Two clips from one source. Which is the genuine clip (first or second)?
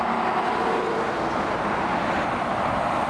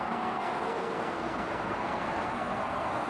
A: first